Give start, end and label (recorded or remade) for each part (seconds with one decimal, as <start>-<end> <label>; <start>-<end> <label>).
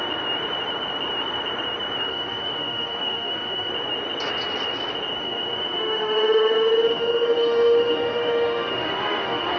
0.0-2.1 recorded; 2.1-3.7 remade; 3.7-5.2 recorded; 5.2-9.6 remade